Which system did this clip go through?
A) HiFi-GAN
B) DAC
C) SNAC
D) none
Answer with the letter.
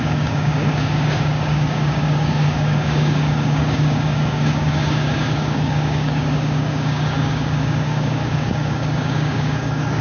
B